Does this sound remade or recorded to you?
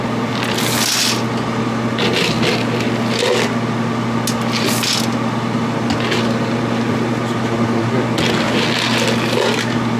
recorded